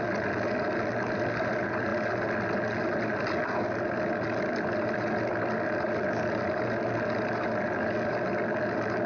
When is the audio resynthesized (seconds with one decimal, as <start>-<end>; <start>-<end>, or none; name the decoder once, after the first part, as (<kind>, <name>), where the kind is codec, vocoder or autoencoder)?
none